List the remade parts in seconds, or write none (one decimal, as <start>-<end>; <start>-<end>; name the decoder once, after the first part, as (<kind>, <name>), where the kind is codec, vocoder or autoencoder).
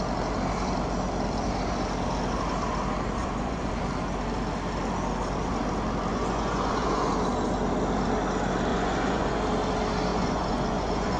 3.2-3.7 (vocoder, Vocos); 6.1-7.1; 8.7-9.4; 10.1-11.2